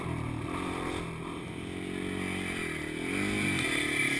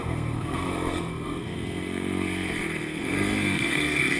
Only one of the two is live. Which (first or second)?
first